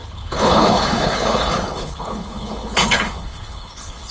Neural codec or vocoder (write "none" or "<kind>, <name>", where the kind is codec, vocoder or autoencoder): codec, HILCodec